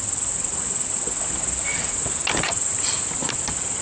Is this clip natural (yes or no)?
yes